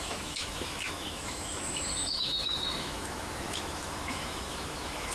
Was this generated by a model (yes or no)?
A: yes